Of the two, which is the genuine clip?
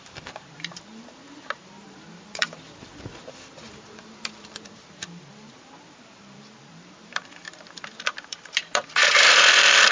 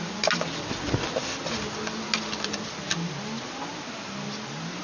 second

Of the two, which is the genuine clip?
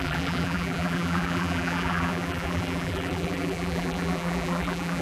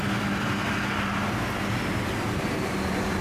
second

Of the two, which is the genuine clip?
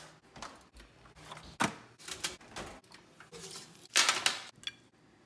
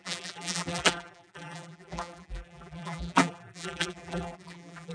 first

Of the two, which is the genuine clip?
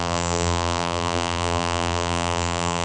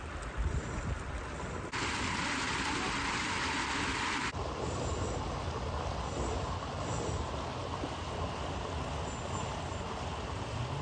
second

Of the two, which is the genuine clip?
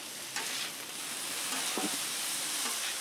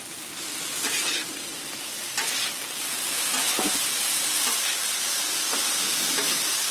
second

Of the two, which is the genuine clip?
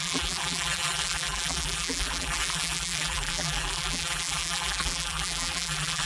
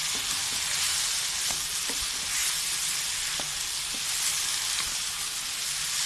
second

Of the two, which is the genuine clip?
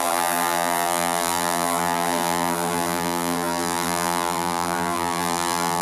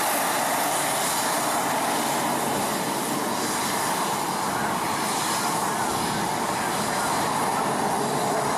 second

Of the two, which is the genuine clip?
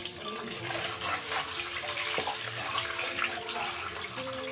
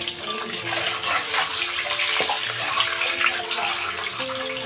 second